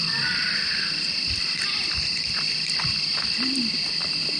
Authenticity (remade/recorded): recorded